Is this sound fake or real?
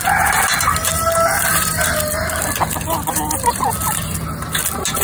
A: real